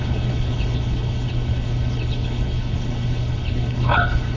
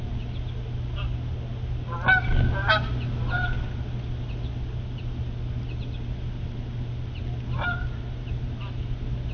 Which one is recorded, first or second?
second